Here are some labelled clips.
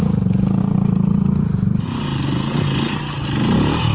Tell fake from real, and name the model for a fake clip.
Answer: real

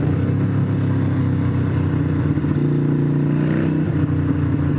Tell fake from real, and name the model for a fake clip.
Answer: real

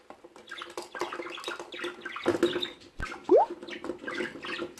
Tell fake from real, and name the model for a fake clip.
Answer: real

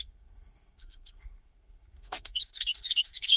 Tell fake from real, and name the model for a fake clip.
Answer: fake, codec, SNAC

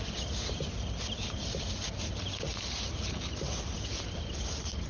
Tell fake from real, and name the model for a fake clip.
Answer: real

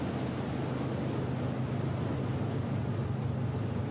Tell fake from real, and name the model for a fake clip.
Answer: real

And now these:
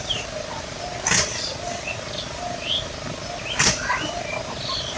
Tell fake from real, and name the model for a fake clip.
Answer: real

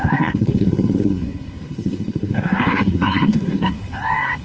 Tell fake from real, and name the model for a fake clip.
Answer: fake, codec, SNAC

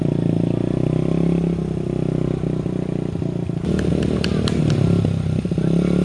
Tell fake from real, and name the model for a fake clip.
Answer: real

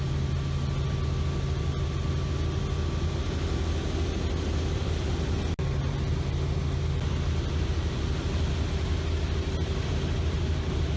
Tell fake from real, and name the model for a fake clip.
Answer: real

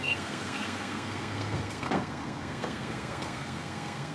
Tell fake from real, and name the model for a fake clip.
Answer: fake, codec, SNAC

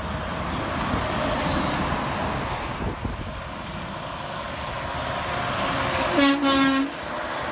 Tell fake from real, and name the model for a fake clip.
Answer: real